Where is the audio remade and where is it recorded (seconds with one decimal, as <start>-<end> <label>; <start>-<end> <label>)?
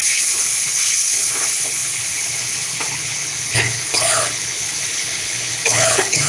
0.0-6.3 remade